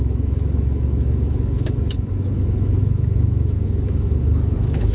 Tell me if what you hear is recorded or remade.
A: remade